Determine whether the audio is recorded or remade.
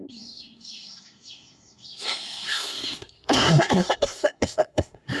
remade